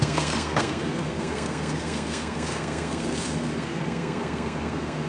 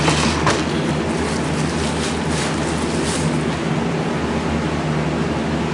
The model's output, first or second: first